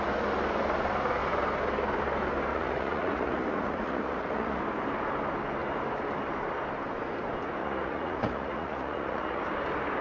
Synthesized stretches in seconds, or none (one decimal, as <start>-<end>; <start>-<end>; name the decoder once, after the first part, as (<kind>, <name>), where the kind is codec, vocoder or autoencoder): 2.5-4.6 (vocoder, Vocos); 7.6-9.4